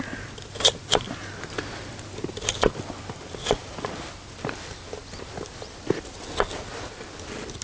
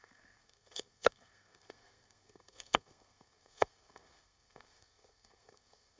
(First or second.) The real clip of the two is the first